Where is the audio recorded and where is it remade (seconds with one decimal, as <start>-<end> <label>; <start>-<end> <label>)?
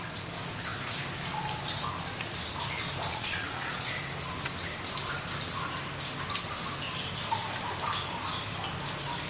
0.0-3.1 recorded; 3.1-3.9 remade; 3.9-9.3 recorded